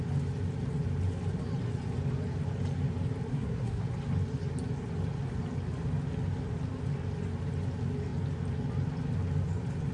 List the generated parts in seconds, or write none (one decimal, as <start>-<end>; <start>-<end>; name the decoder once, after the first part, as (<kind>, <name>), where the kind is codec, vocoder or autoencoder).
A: 3.3-3.8 (codec, SNAC)